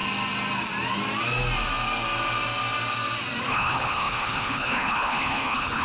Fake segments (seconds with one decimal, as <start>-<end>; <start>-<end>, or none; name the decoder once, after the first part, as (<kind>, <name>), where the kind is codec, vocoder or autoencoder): 3.5-5.8 (codec, HILCodec)